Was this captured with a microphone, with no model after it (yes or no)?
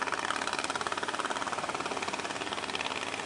yes